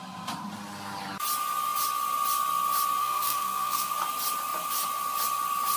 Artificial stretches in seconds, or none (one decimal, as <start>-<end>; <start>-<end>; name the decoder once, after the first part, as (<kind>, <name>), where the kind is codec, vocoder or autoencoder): 3.0-3.9 (codec, SNAC)

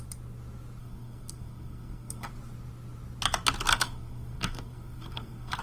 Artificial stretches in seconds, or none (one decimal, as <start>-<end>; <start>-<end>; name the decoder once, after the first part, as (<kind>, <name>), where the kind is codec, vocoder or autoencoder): 0.8-2.3 (codec, SNAC); 3.7-5.6

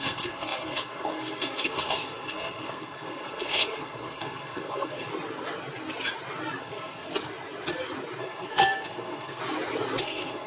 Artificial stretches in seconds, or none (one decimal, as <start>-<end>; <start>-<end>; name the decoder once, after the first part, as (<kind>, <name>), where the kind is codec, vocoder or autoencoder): 0.0-5.1 (codec, SNAC); 6.6-7.1; 8.2-9.4; 10.0-10.5

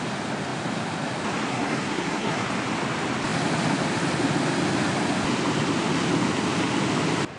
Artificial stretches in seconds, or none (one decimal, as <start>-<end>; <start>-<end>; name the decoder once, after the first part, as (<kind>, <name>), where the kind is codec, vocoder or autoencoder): 1.5-2.5 (codec, SNAC)

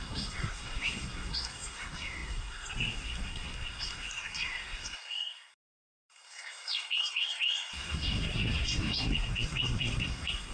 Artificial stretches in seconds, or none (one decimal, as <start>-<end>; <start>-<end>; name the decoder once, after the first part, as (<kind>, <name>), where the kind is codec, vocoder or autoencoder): 0.0-10.5 (codec, SNAC)

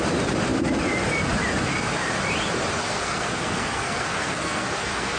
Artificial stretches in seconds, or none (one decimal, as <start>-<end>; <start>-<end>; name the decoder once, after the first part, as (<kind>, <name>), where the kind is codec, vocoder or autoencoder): 2.8-5.2 (codec, SNAC)

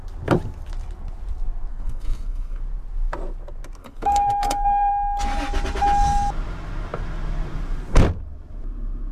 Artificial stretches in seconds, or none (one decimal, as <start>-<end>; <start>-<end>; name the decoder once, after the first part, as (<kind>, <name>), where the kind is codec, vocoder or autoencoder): 1.7-2.6 (codec, SNAC); 3.8-4.9